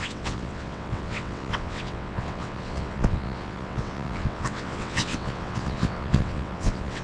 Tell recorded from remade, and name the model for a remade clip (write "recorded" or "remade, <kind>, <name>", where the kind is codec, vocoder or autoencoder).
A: remade, vocoder, WaveNeXt